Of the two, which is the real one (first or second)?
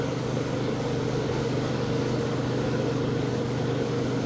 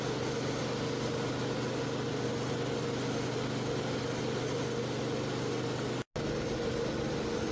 second